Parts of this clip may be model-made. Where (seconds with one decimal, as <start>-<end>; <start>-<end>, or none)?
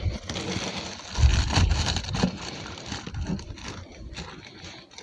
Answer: 1.3-2.7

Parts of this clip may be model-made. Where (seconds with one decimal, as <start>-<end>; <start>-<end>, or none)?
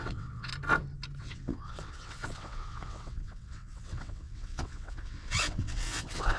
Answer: 0.0-0.5; 1.2-6.4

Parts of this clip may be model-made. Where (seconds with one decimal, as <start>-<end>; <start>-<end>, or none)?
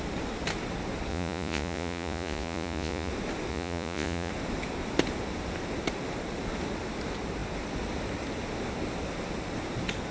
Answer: 1.1-3.1; 3.5-4.3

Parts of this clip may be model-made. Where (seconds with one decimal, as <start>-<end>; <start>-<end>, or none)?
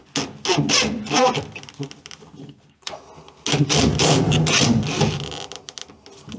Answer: 2.4-2.9